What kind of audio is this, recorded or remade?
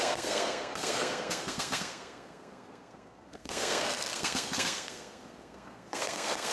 remade